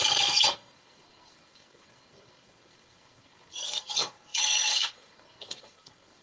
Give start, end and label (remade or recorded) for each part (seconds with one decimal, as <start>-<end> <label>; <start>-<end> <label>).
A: 0.0-6.2 remade